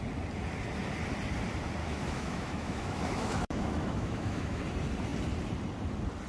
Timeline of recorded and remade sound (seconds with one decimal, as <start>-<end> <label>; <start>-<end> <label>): 0.0-1.8 recorded; 1.8-4.6 remade; 4.6-6.3 recorded